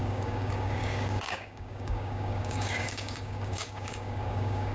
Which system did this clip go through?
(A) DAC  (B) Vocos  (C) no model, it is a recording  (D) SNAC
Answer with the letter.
A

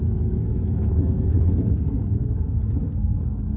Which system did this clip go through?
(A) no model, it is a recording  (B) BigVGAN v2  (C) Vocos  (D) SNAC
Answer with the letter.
D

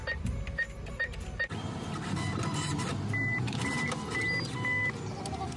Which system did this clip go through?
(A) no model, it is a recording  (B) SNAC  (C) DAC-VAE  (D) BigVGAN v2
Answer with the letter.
A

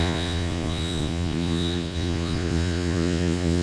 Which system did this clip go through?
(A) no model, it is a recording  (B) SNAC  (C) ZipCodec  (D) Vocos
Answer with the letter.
D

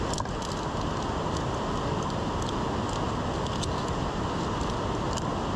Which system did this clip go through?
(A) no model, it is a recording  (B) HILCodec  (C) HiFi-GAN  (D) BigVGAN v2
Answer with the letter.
A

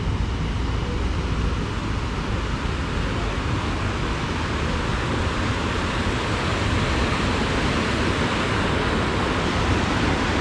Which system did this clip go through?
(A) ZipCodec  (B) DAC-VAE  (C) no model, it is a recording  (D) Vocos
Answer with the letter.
C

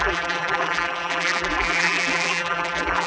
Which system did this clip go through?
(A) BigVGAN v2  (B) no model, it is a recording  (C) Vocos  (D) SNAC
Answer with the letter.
A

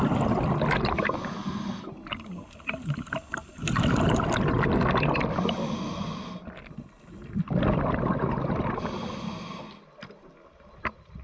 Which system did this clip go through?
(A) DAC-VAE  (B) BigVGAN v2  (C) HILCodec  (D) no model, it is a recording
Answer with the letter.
D